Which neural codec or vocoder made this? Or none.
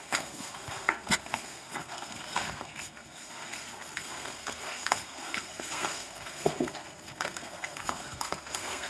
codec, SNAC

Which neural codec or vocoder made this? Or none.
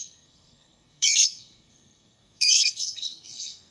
codec, SNAC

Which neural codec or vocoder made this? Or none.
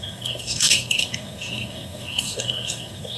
codec, SNAC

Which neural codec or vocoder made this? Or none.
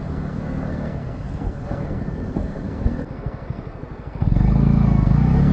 codec, SNAC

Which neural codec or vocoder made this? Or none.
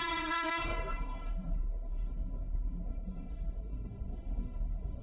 codec, SNAC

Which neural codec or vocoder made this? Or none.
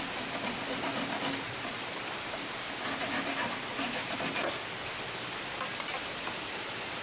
none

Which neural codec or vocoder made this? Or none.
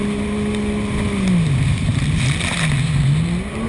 none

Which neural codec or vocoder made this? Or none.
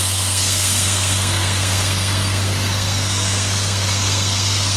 codec, SNAC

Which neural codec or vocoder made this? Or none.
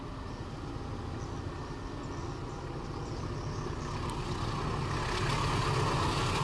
none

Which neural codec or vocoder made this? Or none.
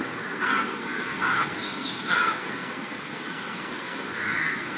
codec, SNAC